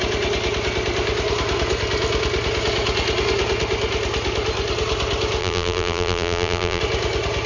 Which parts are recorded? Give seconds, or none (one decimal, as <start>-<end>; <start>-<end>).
0.0-5.4; 6.8-7.5